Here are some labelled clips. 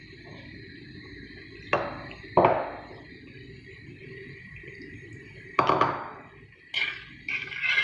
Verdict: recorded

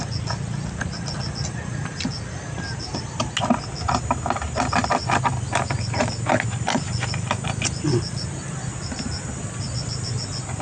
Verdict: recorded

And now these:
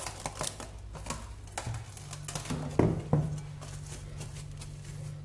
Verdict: recorded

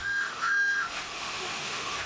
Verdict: remade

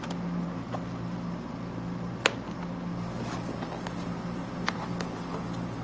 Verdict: recorded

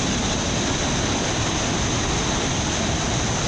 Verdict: recorded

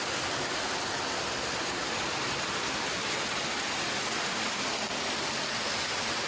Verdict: remade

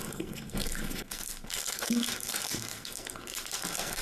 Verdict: remade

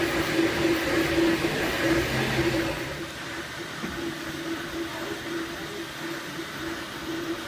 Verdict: recorded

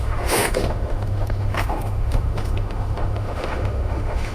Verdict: remade